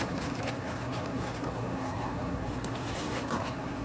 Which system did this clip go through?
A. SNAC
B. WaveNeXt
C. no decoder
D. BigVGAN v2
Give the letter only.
A